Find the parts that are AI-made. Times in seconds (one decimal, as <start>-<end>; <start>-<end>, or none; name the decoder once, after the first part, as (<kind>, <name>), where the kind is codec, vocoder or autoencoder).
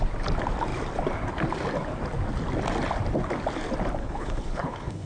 4.0-5.1 (codec, HILCodec)